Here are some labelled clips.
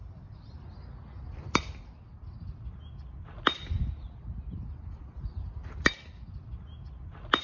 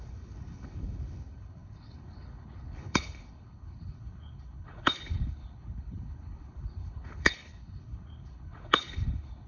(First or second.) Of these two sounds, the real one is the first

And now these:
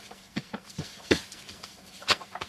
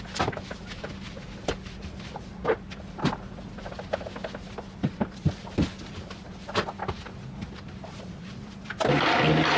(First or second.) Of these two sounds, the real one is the second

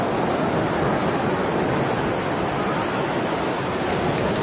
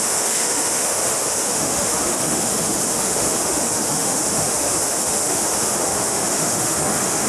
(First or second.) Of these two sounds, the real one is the first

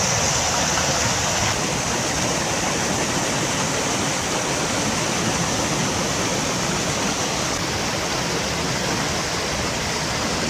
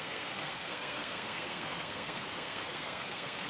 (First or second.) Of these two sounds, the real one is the first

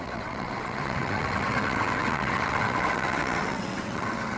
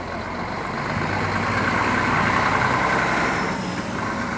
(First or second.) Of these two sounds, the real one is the second